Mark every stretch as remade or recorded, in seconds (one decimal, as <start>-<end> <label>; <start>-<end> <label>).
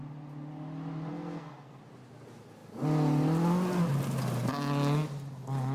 0.0-1.1 recorded; 1.1-1.8 remade; 1.8-5.7 recorded